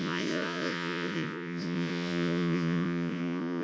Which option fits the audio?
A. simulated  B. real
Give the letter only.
A